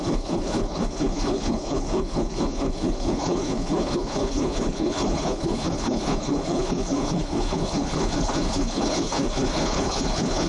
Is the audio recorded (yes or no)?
no